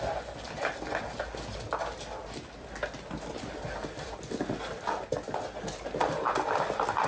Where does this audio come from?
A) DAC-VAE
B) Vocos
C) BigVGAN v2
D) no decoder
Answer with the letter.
D